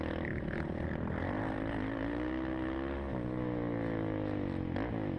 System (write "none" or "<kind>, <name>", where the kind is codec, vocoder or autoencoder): none